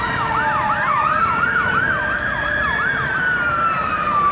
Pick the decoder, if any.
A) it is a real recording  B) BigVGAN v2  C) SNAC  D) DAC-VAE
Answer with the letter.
B